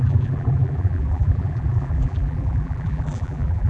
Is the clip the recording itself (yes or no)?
no